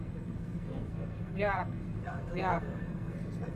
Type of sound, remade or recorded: remade